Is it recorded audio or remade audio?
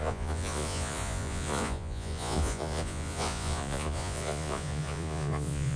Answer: remade